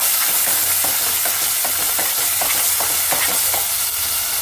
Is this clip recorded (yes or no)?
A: yes